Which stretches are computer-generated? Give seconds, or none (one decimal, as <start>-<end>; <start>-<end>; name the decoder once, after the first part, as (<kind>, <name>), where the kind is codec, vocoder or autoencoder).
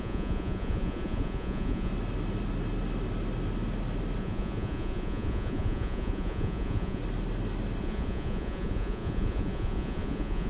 0.0-1.9 (vocoder, Vocos); 4.2-7.0; 7.8-10.5